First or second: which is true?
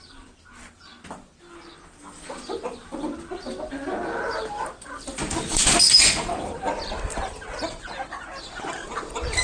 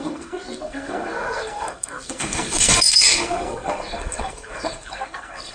first